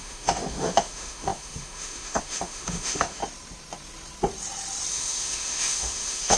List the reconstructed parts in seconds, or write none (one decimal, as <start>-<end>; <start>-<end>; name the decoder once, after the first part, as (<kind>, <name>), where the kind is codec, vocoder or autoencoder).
0.0-3.2 (autoencoder, DAC-VAE); 4.9-6.4